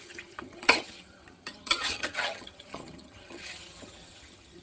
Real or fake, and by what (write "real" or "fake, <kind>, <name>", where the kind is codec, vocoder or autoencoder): fake, vocoder, HiFi-GAN